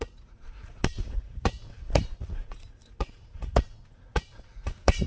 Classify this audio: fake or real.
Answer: fake